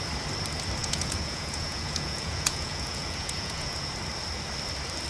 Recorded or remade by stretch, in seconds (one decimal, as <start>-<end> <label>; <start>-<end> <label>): 0.0-0.8 recorded; 0.8-3.9 remade; 3.9-5.1 recorded